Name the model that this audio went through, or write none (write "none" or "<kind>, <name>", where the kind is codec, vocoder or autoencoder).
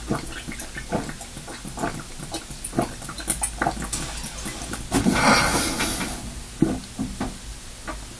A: none